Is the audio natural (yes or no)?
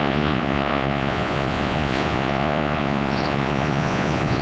no